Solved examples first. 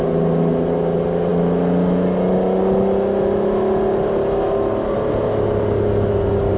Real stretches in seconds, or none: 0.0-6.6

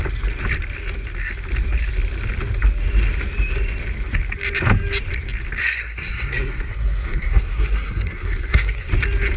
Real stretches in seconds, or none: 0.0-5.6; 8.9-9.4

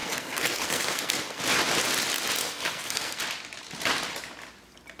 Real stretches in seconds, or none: 1.4-2.4; 3.2-5.0

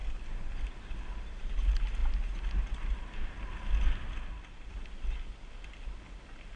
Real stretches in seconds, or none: 0.0-6.6

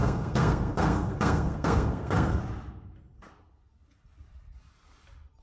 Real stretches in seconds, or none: 2.4-5.4

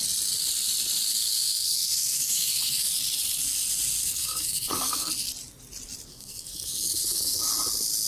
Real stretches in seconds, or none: 0.0-1.1; 2.9-4.0; 5.1-6.1; 7.5-8.1